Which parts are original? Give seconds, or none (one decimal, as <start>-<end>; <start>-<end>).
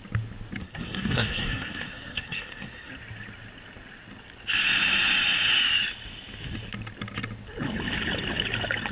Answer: 0.0-0.6; 2.9-8.9